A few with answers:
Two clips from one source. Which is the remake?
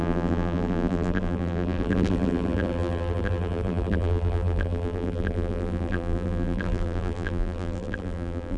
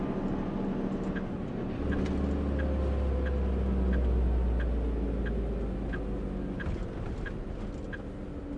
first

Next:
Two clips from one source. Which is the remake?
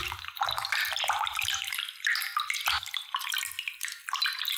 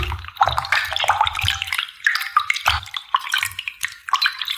second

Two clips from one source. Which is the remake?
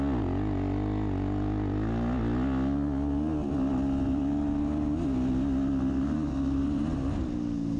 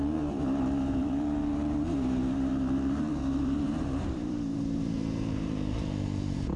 second